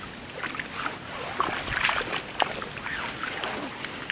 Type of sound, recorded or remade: recorded